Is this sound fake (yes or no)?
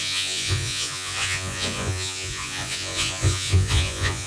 yes